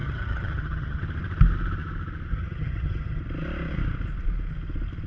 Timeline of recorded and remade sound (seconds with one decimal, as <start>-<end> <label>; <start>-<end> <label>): 0.0-1.0 remade; 1.0-2.3 recorded; 2.3-3.2 remade; 3.2-5.1 recorded